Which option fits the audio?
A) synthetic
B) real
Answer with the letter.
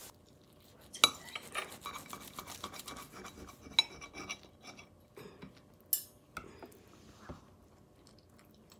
B